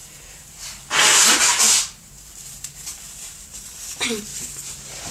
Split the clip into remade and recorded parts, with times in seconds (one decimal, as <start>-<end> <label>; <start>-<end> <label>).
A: 0.0-4.3 recorded; 4.3-5.1 remade